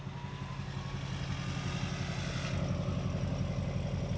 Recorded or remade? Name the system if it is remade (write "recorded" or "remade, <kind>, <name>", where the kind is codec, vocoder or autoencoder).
recorded